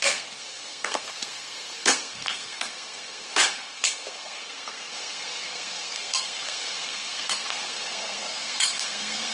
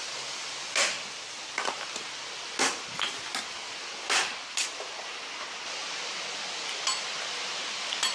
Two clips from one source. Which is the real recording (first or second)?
second